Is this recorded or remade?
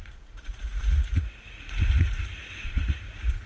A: remade